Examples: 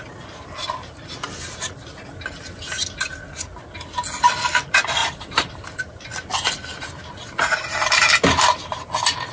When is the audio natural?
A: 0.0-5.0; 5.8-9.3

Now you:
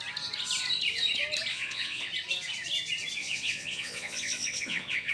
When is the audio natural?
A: 0.0-1.5; 2.1-3.2

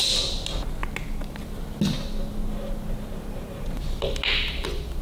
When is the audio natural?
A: 0.0-5.0